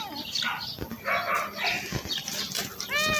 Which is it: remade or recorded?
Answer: recorded